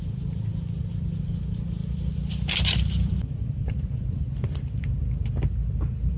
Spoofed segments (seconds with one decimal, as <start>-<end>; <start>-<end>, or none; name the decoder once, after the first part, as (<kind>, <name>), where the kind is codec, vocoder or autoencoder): 1.8-4.9 (vocoder, BigVGAN v2)